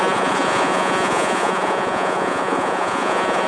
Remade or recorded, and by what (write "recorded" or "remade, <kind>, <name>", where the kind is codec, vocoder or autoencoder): remade, vocoder, Vocos